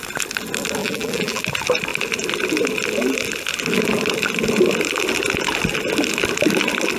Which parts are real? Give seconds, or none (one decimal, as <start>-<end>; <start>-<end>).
0.0-0.8; 1.4-7.0